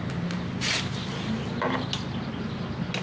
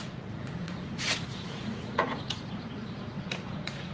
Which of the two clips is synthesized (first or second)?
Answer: second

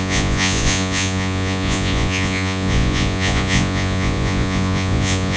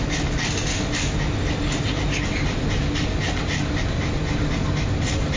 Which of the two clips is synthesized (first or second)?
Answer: first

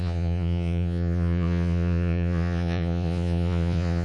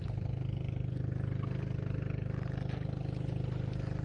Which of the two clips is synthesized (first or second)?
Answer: first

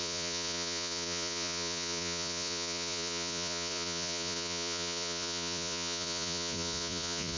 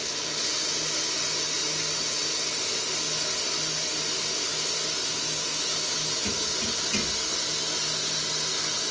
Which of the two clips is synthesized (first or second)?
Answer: first